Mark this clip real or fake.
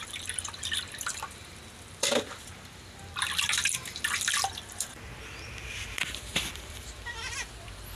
fake